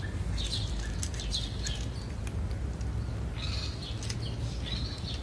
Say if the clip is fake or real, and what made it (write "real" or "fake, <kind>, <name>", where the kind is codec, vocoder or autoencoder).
real